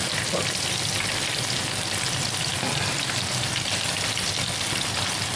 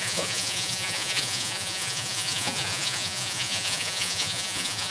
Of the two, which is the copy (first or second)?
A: second